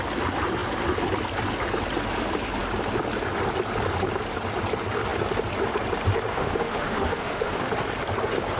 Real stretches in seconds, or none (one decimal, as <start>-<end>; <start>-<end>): 0.0-6.3; 7.7-8.6